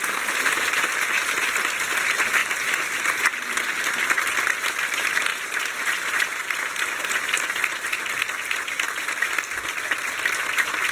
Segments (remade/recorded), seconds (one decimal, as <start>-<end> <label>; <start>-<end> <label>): 0.0-5.3 recorded; 5.3-6.8 remade; 6.8-10.9 recorded